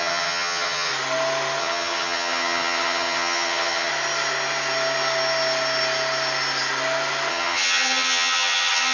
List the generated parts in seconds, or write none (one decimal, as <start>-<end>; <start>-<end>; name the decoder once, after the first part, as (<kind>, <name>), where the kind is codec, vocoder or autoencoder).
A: 0.0-0.9 (vocoder, HiFi-GAN); 1.6-3.9; 7.3-8.9